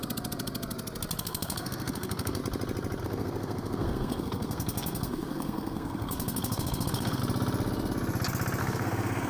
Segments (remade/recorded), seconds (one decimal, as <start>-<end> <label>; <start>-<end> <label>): 0.0-1.2 recorded; 1.2-2.4 remade; 2.4-3.0 recorded; 3.0-7.2 remade; 7.2-8.6 recorded; 8.6-9.3 remade